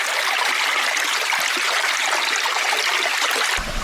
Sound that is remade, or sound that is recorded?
recorded